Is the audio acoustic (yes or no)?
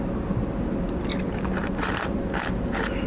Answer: no